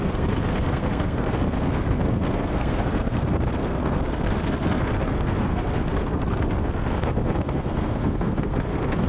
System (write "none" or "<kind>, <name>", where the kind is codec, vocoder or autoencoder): codec, SNAC